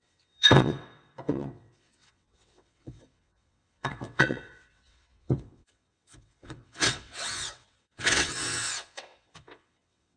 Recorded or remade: remade